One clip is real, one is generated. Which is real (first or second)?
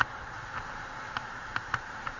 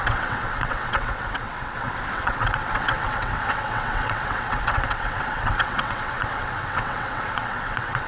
first